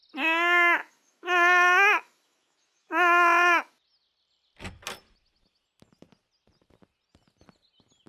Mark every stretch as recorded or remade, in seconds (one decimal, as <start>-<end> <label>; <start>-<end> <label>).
0.0-0.8 recorded; 0.8-3.7 remade; 3.7-8.1 recorded

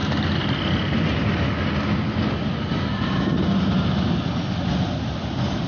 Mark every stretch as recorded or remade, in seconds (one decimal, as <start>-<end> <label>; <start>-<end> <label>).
0.0-5.7 recorded